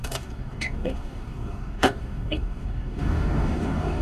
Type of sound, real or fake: fake